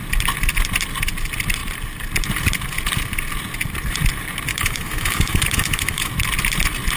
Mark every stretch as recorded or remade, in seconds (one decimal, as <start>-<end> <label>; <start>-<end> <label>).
0.0-4.5 recorded; 4.5-6.1 remade; 6.1-7.0 recorded